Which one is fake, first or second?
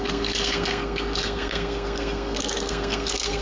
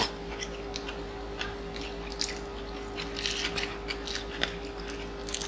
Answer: first